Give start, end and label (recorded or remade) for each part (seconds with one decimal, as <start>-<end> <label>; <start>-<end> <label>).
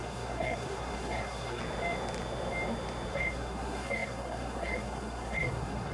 0.0-1.6 remade; 1.6-3.1 recorded; 3.1-5.9 remade